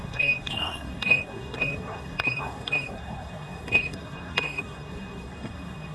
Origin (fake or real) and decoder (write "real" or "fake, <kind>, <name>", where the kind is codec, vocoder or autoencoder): fake, codec, SNAC